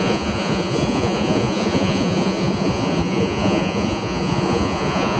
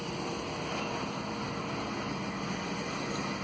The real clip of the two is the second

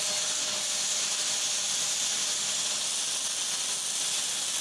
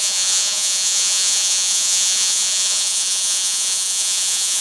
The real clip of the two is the first